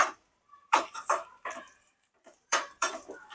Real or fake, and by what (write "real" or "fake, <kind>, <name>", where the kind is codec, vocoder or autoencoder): fake, vocoder, BigVGAN v2